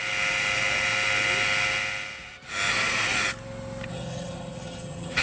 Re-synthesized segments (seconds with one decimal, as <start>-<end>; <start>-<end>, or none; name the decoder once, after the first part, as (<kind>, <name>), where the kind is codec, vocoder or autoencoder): 3.9-5.2 (vocoder, HiFi-GAN)

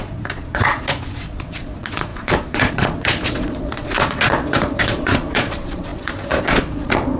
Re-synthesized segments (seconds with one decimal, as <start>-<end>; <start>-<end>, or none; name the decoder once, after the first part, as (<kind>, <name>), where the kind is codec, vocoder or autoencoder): 0.0-7.2 (vocoder, Vocos)